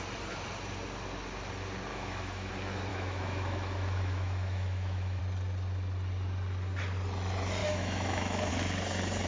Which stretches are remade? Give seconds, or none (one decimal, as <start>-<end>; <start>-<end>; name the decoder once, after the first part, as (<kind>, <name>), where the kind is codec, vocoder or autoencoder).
1.9-2.5 (autoencoder, DAC-VAE); 2.9-5.2; 7.6-8.5

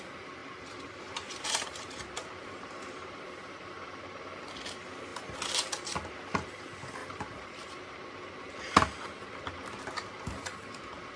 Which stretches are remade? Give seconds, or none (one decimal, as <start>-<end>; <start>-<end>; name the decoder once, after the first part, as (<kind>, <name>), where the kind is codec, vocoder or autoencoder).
0.4-3.2 (vocoder, BigVGAN v2); 7.0-7.7

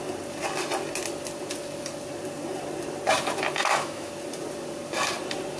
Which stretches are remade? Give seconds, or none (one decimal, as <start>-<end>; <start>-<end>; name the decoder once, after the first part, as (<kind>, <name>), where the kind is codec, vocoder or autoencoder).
3.6-4.1 (autoencoder, DAC-VAE)

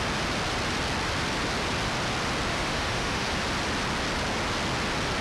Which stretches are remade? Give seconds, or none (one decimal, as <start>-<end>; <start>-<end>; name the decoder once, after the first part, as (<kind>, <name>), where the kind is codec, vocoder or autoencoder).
2.5-3.3 (autoencoder, DAC-VAE)

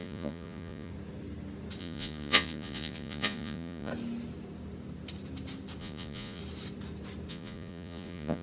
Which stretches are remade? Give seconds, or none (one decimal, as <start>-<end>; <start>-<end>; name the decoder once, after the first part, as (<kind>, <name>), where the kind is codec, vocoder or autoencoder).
0.0-0.9 (vocoder, Vocos); 1.8-3.9; 5.8-6.4; 7.3-8.4

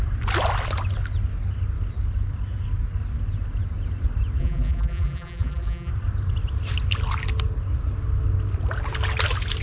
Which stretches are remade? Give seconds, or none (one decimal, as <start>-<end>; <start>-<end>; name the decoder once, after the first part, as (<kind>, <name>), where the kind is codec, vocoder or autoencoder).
4.4-5.9 (vocoder, BigVGAN v2)

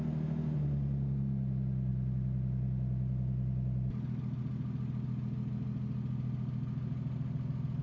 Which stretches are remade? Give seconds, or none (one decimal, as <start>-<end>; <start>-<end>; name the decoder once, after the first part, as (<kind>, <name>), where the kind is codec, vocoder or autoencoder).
none